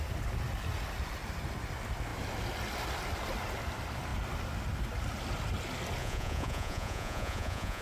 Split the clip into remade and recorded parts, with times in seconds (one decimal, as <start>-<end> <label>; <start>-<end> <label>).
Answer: 0.0-6.0 recorded; 6.0-7.8 remade